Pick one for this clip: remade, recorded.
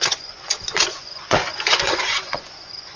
remade